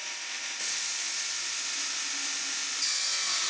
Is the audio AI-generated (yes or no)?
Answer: no